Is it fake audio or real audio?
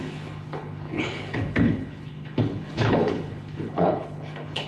fake